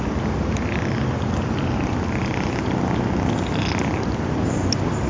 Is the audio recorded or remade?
recorded